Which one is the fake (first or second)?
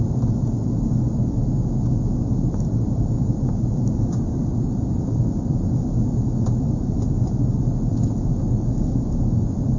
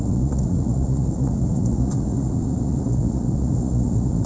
second